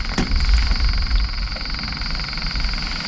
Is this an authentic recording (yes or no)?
yes